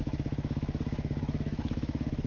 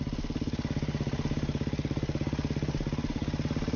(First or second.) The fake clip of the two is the first